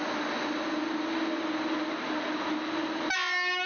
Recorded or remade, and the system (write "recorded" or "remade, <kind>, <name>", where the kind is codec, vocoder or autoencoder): recorded